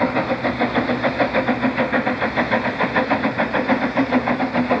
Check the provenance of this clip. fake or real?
real